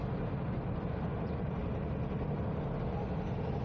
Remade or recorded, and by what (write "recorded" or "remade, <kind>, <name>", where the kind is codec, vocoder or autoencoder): recorded